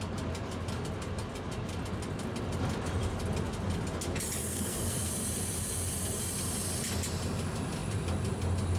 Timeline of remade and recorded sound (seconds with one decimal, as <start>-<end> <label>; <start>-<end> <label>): 0.0-4.4 recorded; 4.4-5.1 remade; 5.1-8.8 recorded